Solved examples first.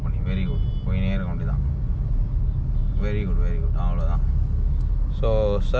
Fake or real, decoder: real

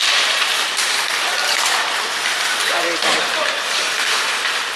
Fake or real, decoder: fake, vocoder, BigVGAN v2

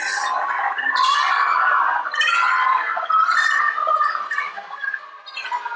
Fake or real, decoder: fake, vocoder, BigVGAN v2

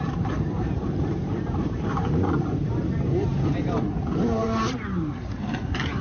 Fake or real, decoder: fake, vocoder, BigVGAN v2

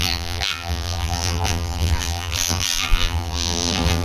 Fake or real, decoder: fake, vocoder, BigVGAN v2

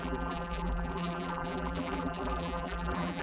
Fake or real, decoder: fake, vocoder, BigVGAN v2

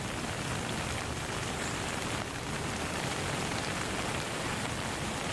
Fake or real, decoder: fake, vocoder, BigVGAN v2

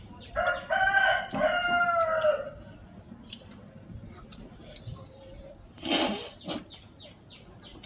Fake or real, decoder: real